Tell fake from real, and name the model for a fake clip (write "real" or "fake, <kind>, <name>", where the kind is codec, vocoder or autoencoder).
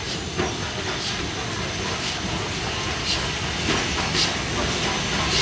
real